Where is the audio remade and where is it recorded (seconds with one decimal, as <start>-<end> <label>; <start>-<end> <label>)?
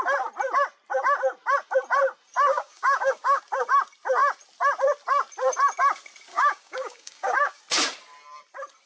0.0-2.5 recorded; 2.5-3.4 remade; 3.4-6.3 recorded; 6.3-7.6 remade; 7.6-8.9 recorded